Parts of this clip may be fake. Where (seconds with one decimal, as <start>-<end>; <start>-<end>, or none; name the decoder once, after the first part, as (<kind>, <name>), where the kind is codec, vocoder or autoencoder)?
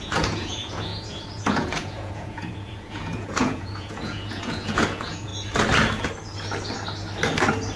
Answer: 0.0-5.3 (vocoder, Vocos)